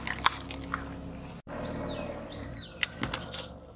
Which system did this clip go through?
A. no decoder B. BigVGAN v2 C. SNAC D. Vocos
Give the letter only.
A